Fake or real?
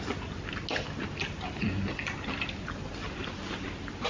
real